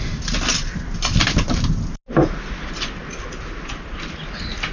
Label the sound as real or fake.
real